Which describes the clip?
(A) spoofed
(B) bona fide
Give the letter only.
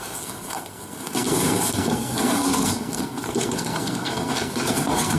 A